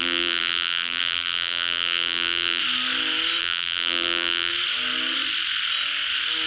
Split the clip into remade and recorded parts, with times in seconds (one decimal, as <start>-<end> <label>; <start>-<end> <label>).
0.0-2.6 remade; 2.6-3.4 recorded; 3.4-4.5 remade; 4.5-6.5 recorded